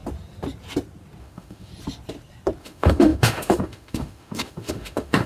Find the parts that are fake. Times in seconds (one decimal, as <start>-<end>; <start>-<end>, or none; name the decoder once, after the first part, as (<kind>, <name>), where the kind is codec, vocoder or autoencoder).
1.2-1.7 (autoencoder, DAC-VAE); 2.6-5.3